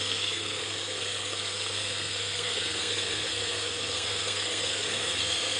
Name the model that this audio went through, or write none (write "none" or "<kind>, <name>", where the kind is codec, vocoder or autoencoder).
codec, SNAC